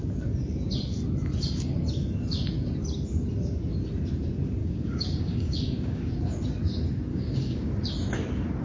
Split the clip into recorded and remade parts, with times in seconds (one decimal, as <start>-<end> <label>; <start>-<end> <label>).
0.0-4.6 recorded; 4.6-6.1 remade; 6.1-7.1 recorded; 7.1-7.7 remade; 7.7-8.6 recorded

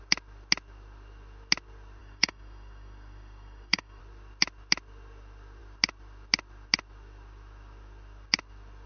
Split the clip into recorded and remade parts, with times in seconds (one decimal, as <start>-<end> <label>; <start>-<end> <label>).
0.0-2.0 recorded; 2.0-4.0 remade; 4.0-8.9 recorded

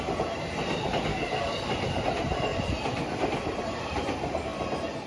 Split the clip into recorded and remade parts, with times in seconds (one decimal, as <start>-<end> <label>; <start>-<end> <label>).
0.0-1.1 recorded; 1.1-1.7 remade; 1.7-5.1 recorded

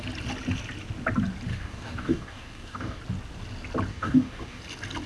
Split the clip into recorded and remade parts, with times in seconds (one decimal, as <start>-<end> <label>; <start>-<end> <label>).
0.0-1.5 recorded; 1.5-3.0 remade; 3.0-3.9 recorded; 3.9-4.6 remade; 4.6-5.1 recorded

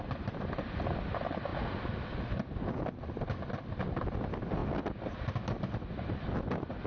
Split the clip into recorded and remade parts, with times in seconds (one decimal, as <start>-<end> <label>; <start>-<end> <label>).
0.0-6.9 recorded

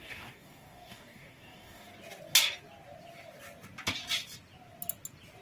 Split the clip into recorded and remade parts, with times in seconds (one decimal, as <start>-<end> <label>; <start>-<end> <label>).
0.0-1.9 remade; 1.9-5.4 recorded